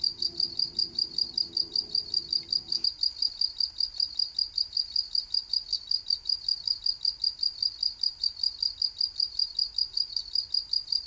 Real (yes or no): yes